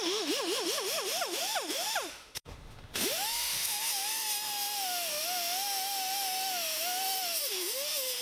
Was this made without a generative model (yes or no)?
no